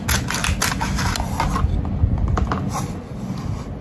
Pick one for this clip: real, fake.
real